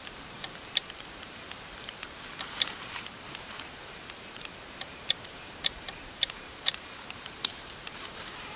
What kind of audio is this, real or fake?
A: fake